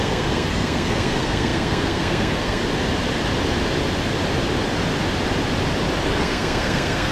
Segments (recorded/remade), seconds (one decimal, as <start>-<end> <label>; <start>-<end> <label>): 0.0-2.6 remade; 2.6-6.2 recorded; 6.2-7.1 remade